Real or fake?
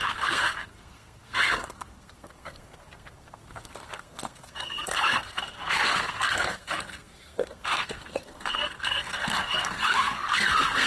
fake